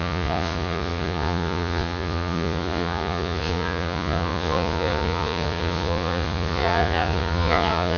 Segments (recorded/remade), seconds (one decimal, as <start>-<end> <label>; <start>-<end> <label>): 0.0-8.0 remade

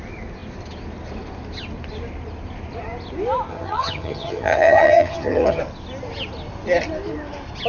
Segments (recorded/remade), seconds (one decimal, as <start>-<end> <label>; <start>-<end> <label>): 0.0-3.5 recorded; 3.5-5.6 remade; 5.6-7.7 recorded

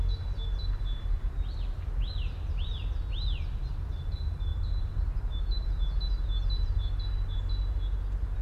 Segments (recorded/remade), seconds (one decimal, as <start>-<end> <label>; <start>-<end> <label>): 0.0-4.5 recorded; 4.5-5.7 remade; 5.7-8.4 recorded

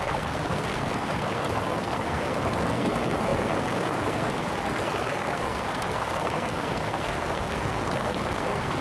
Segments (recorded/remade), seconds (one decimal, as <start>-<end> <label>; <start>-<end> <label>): 0.0-8.8 remade